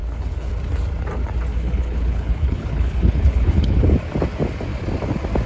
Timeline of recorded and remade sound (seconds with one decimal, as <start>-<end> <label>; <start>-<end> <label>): 0.0-0.5 remade; 0.5-1.5 recorded; 1.5-3.8 remade; 3.8-5.5 recorded